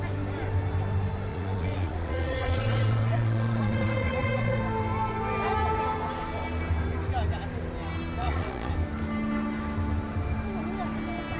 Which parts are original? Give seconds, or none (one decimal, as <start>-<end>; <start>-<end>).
0.0-1.3; 4.6-8.2; 8.7-11.4